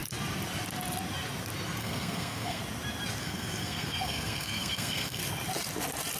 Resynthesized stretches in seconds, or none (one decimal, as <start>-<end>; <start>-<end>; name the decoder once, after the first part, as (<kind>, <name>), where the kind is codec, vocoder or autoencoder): 1.8-2.6 (codec, SNAC); 3.2-5.2